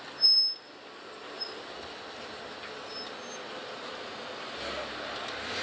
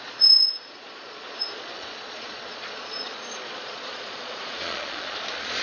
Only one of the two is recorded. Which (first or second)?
first